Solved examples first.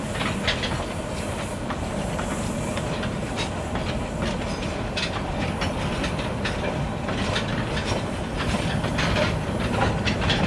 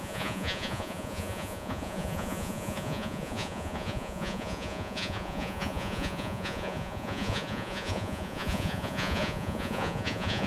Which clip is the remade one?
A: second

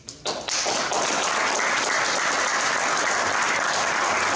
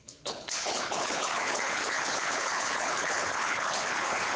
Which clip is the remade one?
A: second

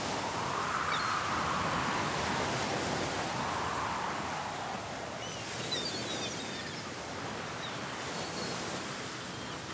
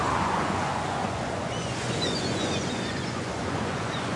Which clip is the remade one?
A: second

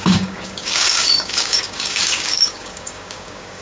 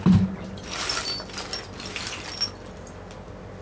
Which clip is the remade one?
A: first